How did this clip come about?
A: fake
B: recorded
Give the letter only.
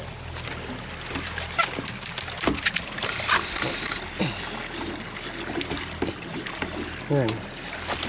B